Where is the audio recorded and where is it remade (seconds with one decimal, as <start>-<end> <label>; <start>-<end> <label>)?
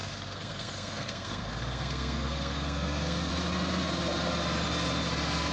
0.0-3.3 remade; 3.3-5.5 recorded